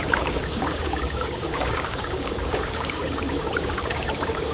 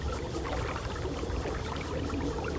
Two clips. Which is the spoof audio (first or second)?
first